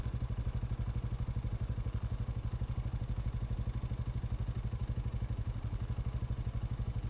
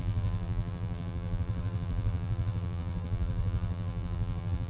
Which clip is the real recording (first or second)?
first